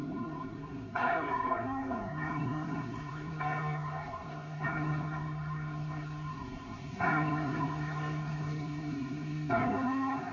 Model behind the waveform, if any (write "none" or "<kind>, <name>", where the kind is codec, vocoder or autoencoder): codec, SNAC